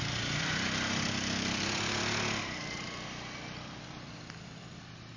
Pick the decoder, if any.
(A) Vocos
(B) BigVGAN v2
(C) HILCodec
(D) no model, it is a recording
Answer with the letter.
B